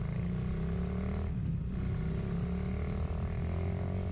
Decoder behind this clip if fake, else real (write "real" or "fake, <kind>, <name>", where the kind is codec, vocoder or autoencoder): real